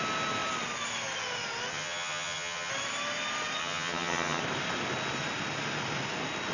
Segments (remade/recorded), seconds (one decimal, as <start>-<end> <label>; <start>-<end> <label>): 0.0-1.7 recorded; 1.7-2.7 remade; 2.7-3.6 recorded; 3.6-4.4 remade; 4.4-6.5 recorded